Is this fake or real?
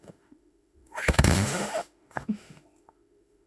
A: fake